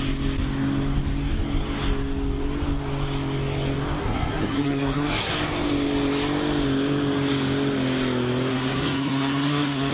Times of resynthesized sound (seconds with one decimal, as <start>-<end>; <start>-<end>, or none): 4.0-5.3; 8.5-9.9